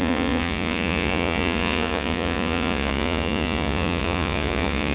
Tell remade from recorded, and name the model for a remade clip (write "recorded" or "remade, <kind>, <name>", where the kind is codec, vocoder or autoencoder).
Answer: remade, vocoder, Vocos